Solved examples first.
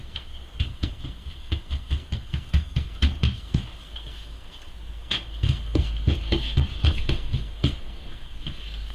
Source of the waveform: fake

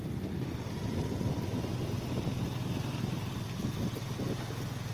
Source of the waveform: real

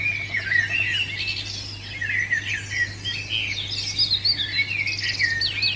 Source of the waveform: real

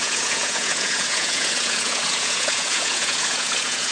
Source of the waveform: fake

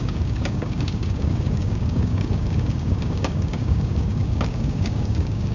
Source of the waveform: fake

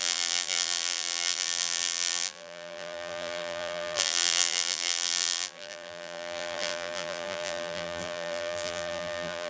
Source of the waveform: fake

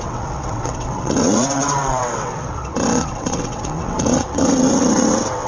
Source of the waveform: fake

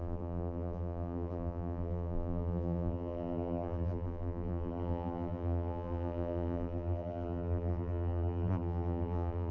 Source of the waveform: fake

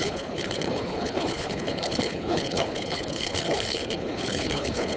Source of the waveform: fake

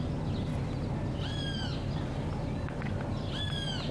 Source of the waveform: real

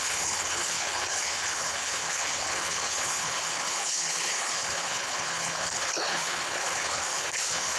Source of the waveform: fake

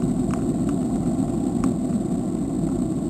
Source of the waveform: real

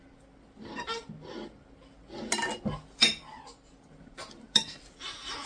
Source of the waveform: real